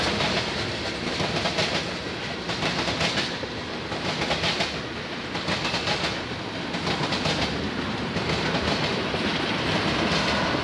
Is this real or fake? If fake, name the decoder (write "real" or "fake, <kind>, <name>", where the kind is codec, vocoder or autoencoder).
real